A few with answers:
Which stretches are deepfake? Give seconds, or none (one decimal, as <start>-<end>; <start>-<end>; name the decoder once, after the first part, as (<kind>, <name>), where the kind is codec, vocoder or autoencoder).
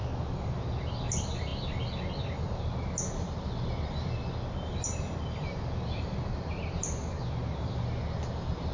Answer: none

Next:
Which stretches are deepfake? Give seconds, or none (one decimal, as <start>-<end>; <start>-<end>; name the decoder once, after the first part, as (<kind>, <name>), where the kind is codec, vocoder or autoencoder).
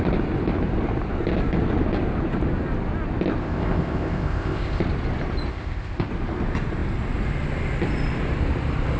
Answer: 3.4-4.8 (codec, ZipCodec); 5.5-6.1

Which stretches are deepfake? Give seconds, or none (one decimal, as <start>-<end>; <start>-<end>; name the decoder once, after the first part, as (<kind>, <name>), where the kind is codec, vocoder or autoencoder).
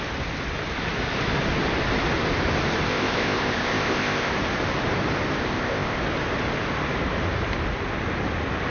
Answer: 2.9-4.3 (codec, ZipCodec); 5.4-6.0